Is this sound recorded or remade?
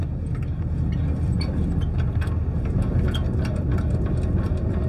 recorded